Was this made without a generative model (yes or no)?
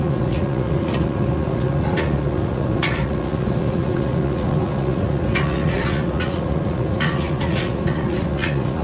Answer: no